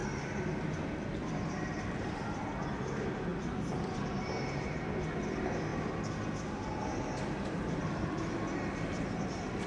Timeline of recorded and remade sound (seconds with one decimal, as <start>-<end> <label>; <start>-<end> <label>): 0.0-9.7 recorded